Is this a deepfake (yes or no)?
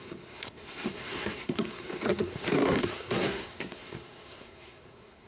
yes